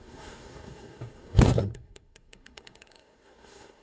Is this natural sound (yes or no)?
no